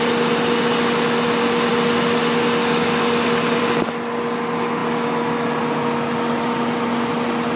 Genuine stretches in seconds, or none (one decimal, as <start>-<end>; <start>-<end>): 0.0-7.6